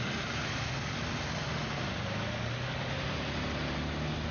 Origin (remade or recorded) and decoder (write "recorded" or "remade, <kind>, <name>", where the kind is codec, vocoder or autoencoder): recorded